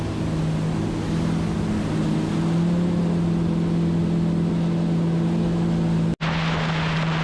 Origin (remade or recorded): recorded